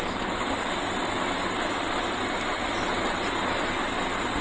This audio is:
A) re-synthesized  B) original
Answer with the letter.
B